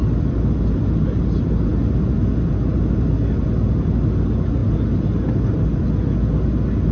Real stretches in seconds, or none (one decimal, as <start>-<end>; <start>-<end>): 0.0-6.9